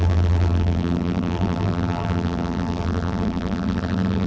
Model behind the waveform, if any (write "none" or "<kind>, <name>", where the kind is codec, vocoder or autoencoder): vocoder, BigVGAN v2